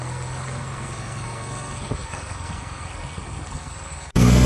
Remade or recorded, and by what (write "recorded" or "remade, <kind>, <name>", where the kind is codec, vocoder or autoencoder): remade, codec, SNAC